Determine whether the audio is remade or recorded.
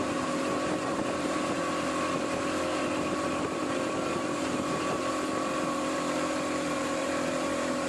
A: remade